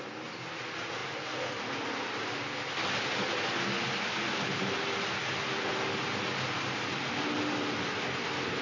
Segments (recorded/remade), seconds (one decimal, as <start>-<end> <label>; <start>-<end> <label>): 0.0-8.6 recorded

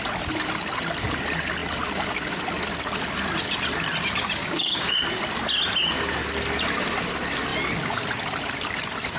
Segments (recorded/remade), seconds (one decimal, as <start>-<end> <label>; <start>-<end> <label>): 0.0-4.4 recorded; 4.4-4.9 remade; 4.9-9.2 recorded

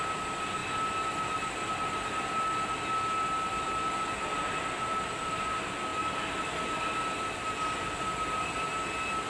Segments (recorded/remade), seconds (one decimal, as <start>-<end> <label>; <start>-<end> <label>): 0.0-9.3 recorded

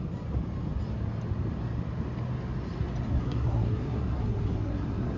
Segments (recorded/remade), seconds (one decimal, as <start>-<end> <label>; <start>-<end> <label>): 0.0-3.1 recorded; 3.1-5.2 remade

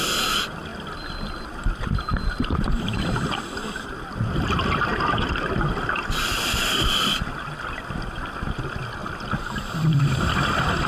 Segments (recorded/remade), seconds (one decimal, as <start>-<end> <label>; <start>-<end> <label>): 0.0-0.7 recorded; 0.7-1.4 remade; 1.4-4.9 recorded; 4.9-6.9 remade; 6.9-9.0 recorded; 9.0-10.0 remade; 10.0-10.9 recorded